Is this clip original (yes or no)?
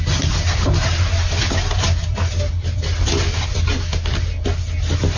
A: yes